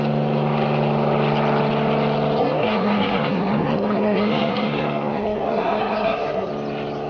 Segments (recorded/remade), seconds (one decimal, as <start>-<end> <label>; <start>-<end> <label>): 0.0-2.4 recorded; 2.4-6.5 remade; 6.5-7.1 recorded